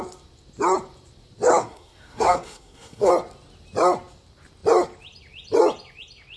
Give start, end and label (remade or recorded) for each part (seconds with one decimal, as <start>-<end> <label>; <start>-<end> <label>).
0.0-1.5 recorded; 1.5-3.1 remade; 3.1-6.4 recorded